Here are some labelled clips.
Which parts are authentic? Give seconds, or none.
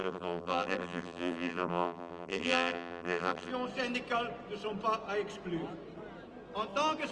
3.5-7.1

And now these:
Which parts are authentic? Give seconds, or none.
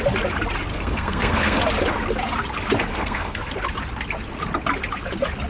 0.0-0.7; 1.6-2.9; 3.5-5.5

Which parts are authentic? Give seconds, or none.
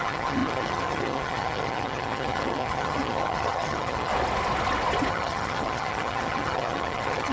4.1-5.1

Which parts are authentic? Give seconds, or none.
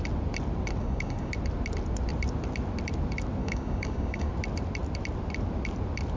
0.0-0.8; 1.3-3.4; 4.3-6.2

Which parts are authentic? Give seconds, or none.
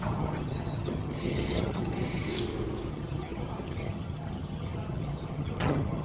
2.3-2.9